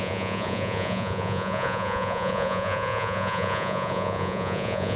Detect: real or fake fake